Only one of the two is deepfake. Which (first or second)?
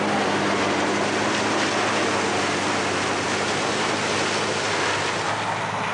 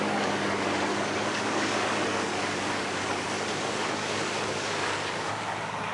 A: second